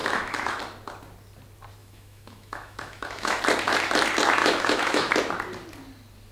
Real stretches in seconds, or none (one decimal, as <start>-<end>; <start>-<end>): 0.6-1.8; 3.4-4.4; 5.1-6.3